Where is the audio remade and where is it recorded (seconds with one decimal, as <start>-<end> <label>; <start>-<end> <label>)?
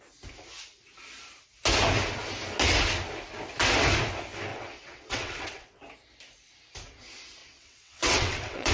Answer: 0.0-4.5 recorded; 4.5-5.8 remade; 5.8-7.4 recorded; 7.4-8.7 remade